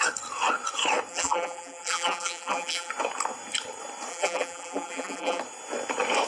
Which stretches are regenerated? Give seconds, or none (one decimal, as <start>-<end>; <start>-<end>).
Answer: 1.1-2.9; 4.1-5.4